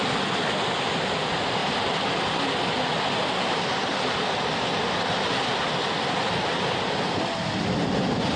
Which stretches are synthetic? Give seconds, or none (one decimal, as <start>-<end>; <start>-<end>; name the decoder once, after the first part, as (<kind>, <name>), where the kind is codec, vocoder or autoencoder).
none